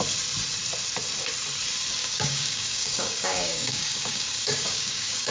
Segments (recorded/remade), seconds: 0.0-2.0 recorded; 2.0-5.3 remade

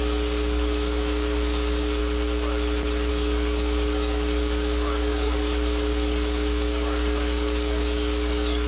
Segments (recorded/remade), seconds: 0.0-2.0 remade; 2.0-3.1 recorded; 3.1-8.7 remade